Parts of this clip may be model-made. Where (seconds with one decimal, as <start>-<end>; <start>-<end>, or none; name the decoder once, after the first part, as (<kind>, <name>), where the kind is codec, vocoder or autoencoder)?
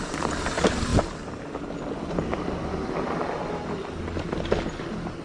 none